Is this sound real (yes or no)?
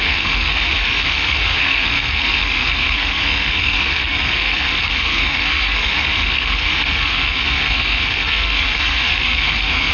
no